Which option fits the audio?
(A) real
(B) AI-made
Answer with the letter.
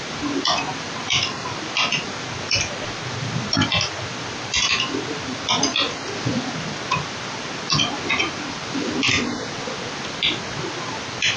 A